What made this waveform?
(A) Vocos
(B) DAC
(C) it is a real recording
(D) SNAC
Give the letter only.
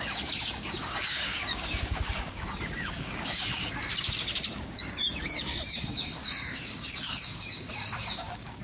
B